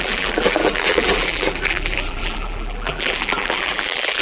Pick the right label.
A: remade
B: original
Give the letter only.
A